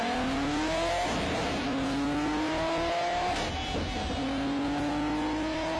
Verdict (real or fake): real